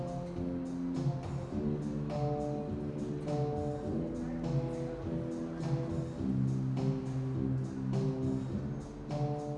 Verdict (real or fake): real